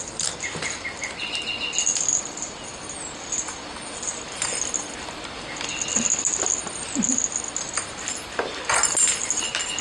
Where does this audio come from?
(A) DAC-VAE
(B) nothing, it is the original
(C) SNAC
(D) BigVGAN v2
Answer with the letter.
B